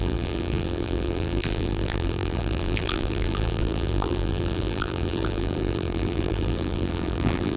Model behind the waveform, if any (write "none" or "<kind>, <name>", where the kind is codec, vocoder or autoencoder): vocoder, BigVGAN v2